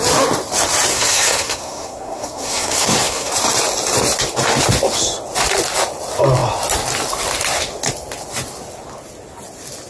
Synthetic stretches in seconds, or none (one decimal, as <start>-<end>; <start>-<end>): 0.9-3.3